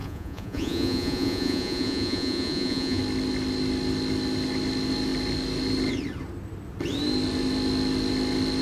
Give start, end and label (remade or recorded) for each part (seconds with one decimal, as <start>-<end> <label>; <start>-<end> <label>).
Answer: 0.0-3.0 remade; 3.0-8.6 recorded